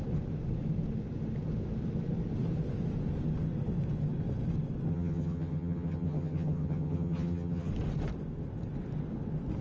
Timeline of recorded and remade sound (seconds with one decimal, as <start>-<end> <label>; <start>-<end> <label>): 0.0-4.9 recorded; 4.9-7.7 remade; 7.7-9.6 recorded